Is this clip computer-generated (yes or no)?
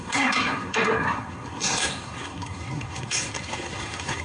yes